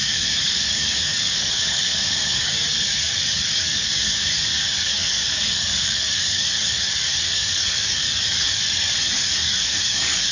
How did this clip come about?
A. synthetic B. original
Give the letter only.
A